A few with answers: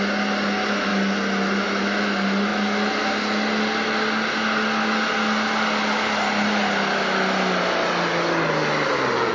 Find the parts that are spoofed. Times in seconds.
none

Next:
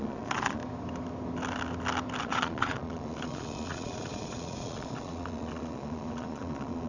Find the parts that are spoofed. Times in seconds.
0.0-0.6 (vocoder, Vocos); 2.2-6.9

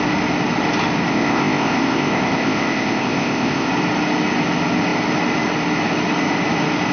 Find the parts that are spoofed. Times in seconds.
1.1-3.7 (codec, ZipCodec)

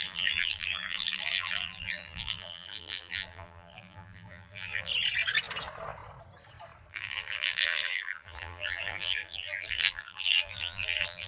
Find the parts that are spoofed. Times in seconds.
0.0-4.9 (vocoder, BigVGAN v2); 6.9-11.3

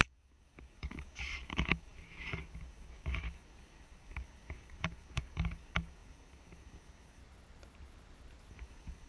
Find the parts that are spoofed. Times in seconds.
0.0-7.2 (codec, DAC); 8.5-9.1

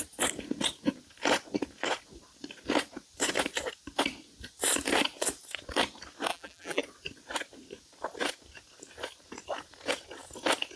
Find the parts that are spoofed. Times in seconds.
6.3-6.8 (vocoder, BigVGAN v2)

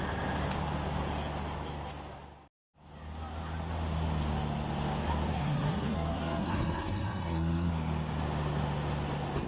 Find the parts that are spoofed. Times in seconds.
5.3-7.7 (codec, SNAC)